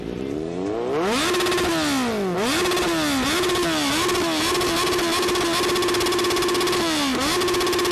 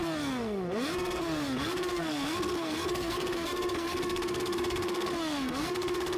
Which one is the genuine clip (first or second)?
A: first